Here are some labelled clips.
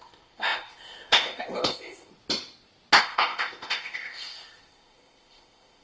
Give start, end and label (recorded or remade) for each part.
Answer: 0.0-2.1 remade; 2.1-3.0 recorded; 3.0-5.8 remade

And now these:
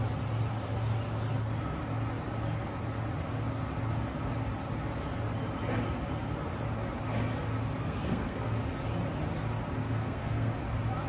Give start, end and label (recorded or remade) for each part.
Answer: 0.0-7.8 recorded; 7.8-8.6 remade; 8.6-9.8 recorded; 9.8-10.5 remade; 10.5-11.1 recorded

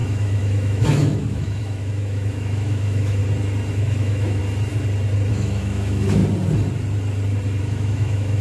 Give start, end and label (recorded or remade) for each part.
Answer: 0.0-3.2 remade; 3.2-3.7 recorded; 3.7-4.4 remade; 4.4-5.3 recorded; 5.3-6.2 remade; 6.2-7.6 recorded; 7.6-8.4 remade